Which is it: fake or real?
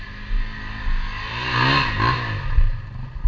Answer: real